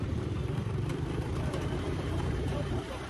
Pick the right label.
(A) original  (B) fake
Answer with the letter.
B